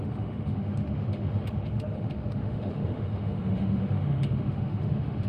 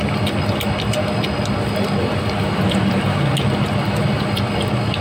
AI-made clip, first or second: first